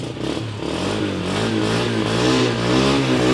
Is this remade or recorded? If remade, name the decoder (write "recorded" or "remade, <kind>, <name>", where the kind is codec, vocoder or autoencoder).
recorded